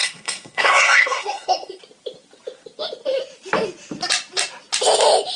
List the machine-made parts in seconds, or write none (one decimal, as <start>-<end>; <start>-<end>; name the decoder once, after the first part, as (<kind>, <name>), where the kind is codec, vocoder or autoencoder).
0.0-1.8 (codec, SNAC)